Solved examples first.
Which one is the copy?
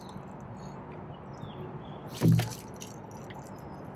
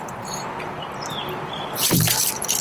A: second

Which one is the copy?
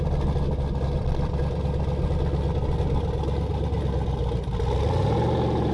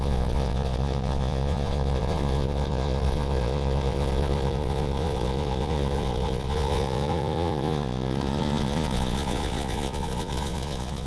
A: second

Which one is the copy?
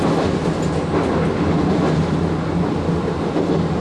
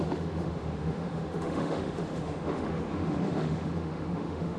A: second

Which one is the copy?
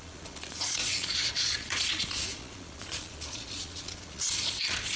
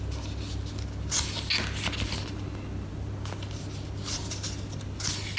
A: first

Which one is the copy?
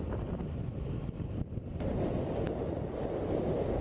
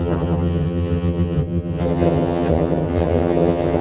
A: second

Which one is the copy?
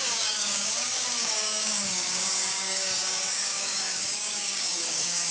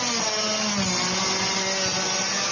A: first